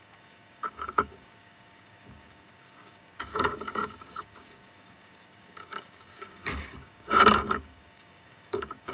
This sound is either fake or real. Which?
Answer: fake